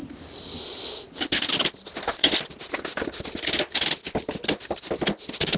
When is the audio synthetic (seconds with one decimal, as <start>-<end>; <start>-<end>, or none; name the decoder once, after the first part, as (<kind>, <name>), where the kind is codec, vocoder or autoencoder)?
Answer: none